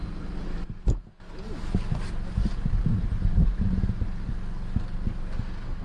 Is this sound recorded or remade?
recorded